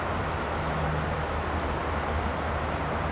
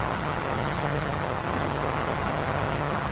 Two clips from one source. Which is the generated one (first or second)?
second